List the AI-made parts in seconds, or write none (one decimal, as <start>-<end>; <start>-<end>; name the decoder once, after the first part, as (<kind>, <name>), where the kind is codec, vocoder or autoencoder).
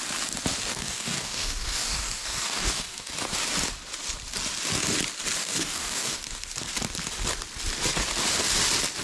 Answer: 0.7-3.1 (codec, DAC); 5.4-6.2